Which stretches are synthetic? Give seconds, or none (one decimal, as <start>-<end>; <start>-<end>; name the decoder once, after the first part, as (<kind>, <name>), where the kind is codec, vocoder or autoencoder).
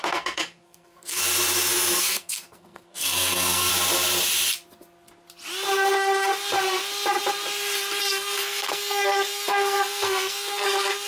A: 0.0-1.2 (codec, SNAC); 2.0-3.7; 8.0-11.1